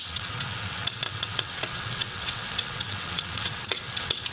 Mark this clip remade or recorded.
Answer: remade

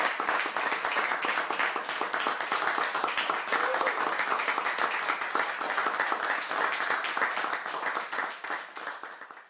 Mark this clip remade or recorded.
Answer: recorded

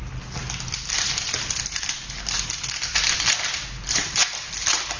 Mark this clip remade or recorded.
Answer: recorded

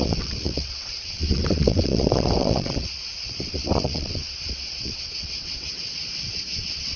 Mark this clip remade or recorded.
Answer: remade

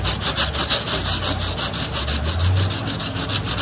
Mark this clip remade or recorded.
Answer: recorded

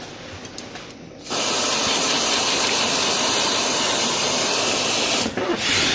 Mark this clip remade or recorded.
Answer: recorded